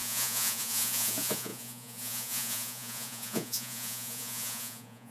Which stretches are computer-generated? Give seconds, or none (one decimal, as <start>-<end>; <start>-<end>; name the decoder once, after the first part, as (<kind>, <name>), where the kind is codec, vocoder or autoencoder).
0.0-5.1 (vocoder, Vocos)